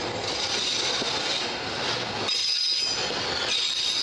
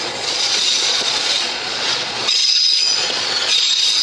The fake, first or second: second